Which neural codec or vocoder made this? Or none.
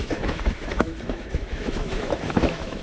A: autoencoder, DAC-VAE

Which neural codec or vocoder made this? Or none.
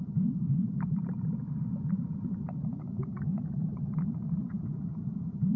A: vocoder, BigVGAN v2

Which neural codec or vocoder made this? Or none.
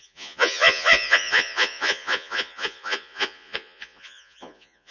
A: vocoder, Vocos